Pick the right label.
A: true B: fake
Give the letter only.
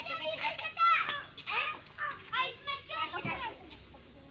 B